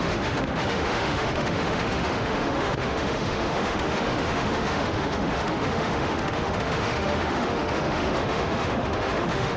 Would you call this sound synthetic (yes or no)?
yes